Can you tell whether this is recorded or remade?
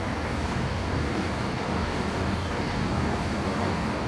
remade